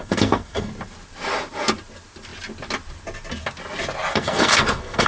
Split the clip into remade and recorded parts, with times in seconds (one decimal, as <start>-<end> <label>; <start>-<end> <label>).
0.0-0.7 remade; 0.7-4.1 recorded; 4.1-5.1 remade

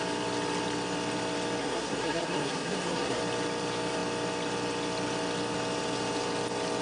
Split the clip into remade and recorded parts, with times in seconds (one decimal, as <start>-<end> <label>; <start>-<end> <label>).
0.0-1.6 recorded; 1.6-3.2 remade; 3.2-6.8 recorded